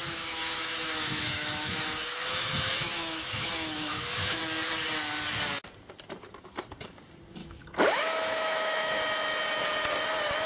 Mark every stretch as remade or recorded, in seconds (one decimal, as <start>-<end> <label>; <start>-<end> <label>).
0.0-4.4 remade; 4.4-7.4 recorded; 7.4-9.0 remade; 9.0-10.5 recorded